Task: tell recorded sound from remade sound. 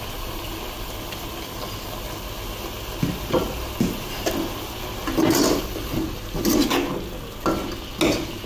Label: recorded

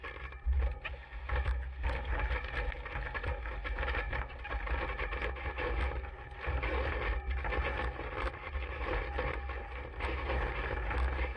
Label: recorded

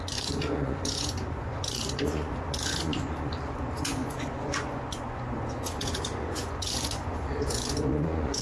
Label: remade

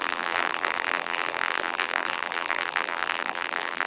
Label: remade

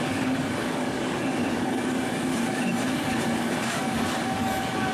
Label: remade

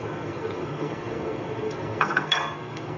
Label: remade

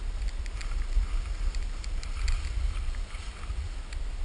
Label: recorded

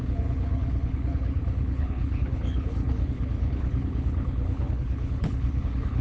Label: remade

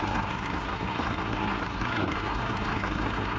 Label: remade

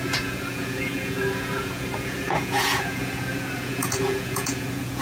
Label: remade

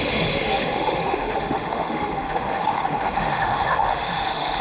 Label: remade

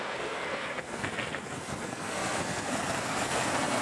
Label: remade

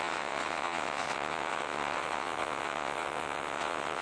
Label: remade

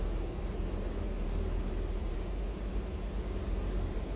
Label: recorded